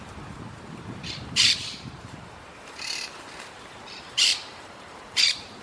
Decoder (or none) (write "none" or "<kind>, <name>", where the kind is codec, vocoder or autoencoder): vocoder, BigVGAN v2